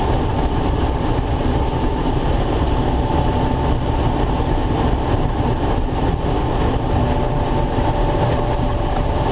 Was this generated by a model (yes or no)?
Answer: yes